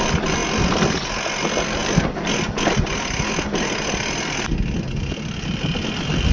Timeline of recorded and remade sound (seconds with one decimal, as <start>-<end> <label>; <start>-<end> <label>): 0.0-6.3 recorded